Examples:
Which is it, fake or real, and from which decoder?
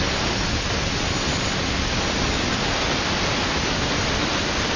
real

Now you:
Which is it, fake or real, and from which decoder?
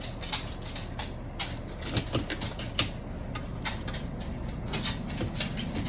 real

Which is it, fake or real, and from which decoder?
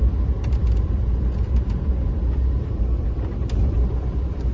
real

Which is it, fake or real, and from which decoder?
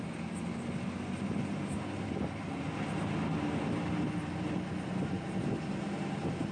real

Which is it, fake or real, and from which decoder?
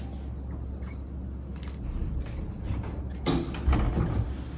real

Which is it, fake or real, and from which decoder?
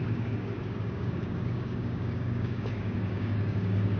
fake, codec, DAC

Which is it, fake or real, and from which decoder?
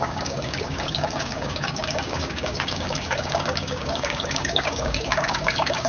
fake, codec, DAC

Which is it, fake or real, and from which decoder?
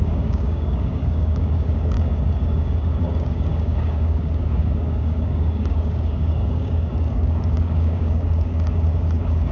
fake, codec, DAC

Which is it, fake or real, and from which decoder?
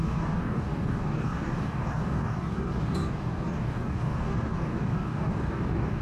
fake, codec, DAC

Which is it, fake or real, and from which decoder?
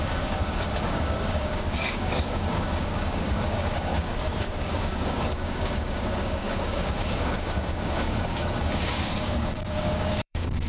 fake, codec, DAC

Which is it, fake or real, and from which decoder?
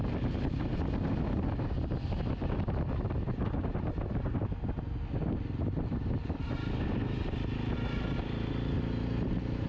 real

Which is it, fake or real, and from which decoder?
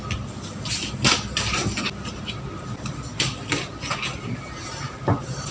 real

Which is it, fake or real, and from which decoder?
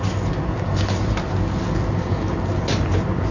real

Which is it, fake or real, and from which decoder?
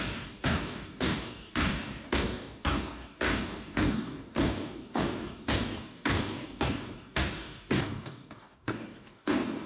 fake, codec, DAC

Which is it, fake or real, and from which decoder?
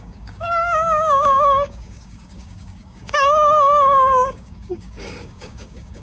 fake, codec, DAC